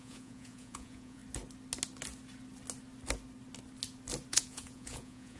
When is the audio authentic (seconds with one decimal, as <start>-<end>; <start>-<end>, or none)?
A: 1.2-4.3